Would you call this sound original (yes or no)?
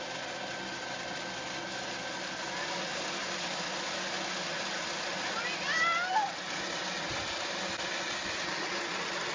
yes